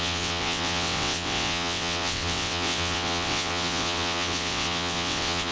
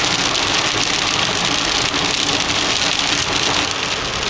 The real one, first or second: second